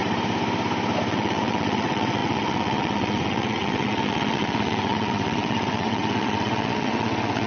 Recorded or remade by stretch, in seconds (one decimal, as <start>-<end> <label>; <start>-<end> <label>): 0.0-1.1 recorded; 1.1-7.5 remade